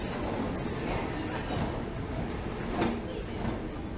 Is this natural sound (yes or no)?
yes